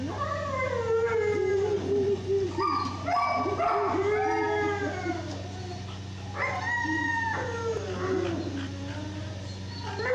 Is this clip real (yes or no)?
yes